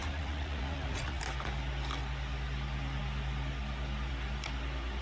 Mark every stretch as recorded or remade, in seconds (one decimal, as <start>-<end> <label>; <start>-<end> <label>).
0.0-1.2 remade; 1.2-5.0 recorded